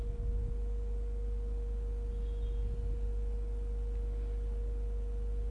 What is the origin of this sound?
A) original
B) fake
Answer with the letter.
A